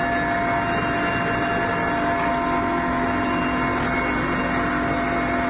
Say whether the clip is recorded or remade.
recorded